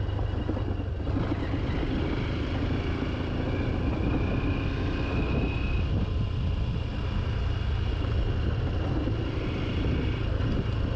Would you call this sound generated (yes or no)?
no